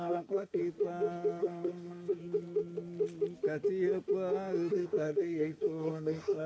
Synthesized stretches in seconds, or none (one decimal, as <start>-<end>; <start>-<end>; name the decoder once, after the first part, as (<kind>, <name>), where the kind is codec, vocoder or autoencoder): 0.0-0.6 (codec, SNAC); 1.4-2.2; 4.7-6.5

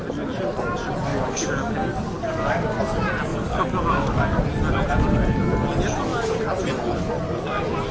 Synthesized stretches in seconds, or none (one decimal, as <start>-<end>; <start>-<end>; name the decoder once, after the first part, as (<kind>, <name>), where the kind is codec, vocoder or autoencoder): 1.1-2.8 (codec, DAC); 3.3-4.4

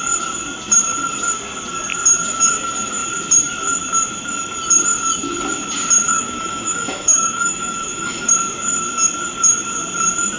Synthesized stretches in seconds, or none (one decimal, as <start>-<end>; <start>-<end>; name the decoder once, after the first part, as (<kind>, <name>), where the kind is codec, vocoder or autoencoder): 6.1-8.3 (autoencoder, DAC-VAE)

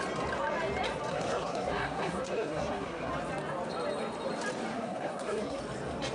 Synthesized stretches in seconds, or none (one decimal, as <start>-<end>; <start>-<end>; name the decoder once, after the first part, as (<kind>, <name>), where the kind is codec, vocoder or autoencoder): 1.1-3.1 (codec, SNAC); 4.7-5.6

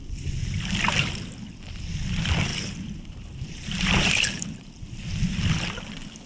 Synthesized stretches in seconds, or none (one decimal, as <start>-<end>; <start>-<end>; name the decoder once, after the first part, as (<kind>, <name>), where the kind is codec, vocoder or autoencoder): 2.5-5.0 (vocoder, BigVGAN v2)

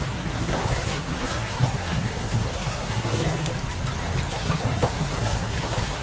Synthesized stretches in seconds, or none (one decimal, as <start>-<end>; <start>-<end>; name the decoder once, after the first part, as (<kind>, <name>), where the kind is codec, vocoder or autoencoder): 0.0-3.5 (codec, SNAC); 4.3-6.0

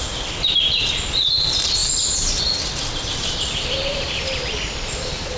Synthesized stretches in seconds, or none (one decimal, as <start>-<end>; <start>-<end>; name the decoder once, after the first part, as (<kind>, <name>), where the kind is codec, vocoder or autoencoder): none